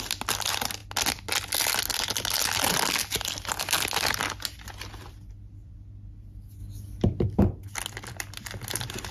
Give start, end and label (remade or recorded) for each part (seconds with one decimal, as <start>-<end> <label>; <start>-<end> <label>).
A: 0.0-9.1 recorded